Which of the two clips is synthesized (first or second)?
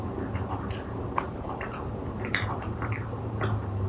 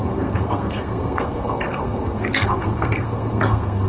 second